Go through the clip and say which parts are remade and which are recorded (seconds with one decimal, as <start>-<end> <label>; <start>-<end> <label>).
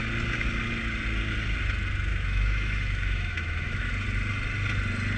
0.0-2.1 recorded; 2.1-3.9 remade; 3.9-5.2 recorded